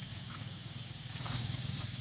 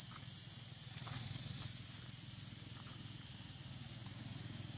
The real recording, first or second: second